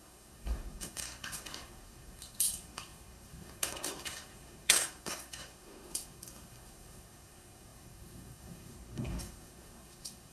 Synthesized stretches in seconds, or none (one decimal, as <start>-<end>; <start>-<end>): 0.0-10.3

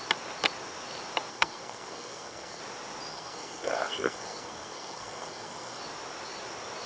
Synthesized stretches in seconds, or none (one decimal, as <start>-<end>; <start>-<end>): 1.3-2.6; 3.1-5.8

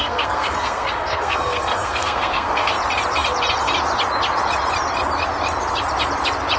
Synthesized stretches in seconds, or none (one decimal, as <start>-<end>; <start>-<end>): 0.0-2.7

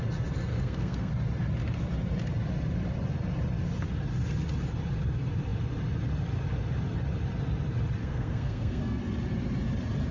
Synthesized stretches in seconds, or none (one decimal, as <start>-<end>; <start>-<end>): 0.5-1.1; 8.0-9.0

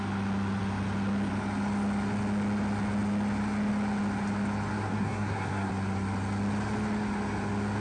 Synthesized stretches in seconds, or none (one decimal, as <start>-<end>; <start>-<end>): 4.7-5.7

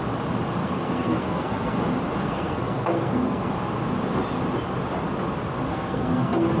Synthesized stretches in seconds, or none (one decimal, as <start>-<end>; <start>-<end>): 0.6-1.8; 2.2-3.5; 5.7-6.6

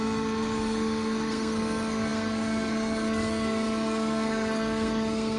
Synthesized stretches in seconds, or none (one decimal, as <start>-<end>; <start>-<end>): 0.0-5.4